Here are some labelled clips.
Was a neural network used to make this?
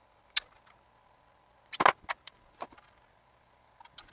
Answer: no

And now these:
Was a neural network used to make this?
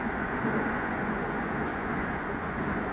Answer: yes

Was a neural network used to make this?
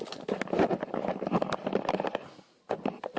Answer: no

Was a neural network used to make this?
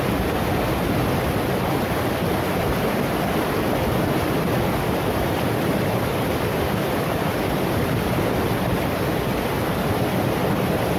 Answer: no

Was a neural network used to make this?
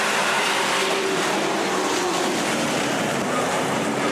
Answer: yes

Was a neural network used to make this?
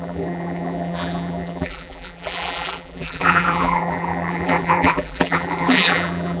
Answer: yes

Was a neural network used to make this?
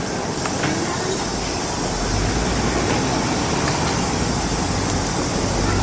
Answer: no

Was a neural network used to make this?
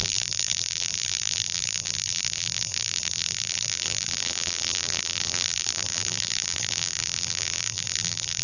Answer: yes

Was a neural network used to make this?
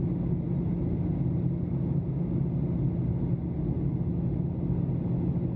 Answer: no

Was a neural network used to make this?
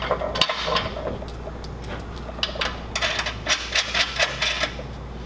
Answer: no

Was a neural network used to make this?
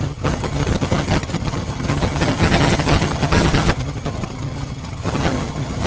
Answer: yes